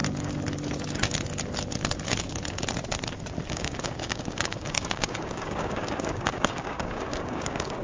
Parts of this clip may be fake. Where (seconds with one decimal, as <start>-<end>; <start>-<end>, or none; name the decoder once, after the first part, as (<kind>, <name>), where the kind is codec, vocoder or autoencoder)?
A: 3.5-7.8 (codec, DAC)